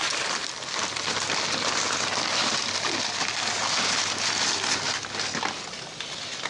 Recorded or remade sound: recorded